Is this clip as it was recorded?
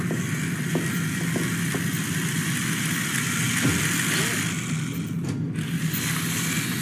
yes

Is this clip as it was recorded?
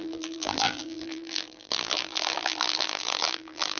no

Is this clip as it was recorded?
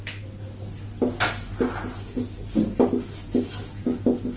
yes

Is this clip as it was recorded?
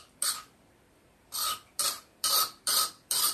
no